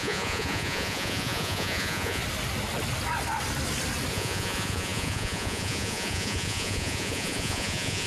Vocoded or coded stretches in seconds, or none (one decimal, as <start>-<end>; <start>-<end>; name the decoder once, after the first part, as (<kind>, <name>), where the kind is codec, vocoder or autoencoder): 0.0-2.2 (vocoder, Vocos); 4.1-8.1